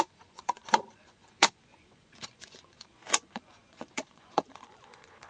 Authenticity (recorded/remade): remade